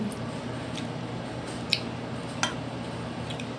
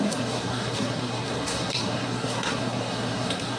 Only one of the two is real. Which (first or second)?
first